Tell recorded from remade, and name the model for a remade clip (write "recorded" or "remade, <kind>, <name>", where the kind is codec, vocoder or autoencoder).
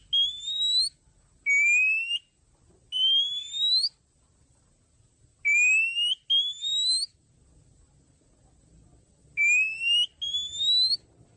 recorded